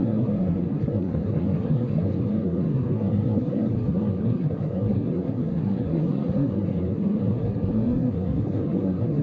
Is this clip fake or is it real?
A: fake